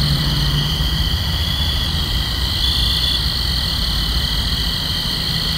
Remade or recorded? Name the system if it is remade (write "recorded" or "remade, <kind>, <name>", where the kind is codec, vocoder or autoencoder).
remade, vocoder, BigVGAN v2